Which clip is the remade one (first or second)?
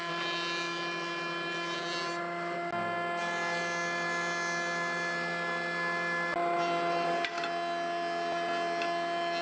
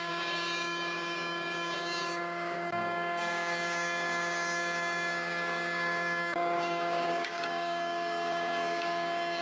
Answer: second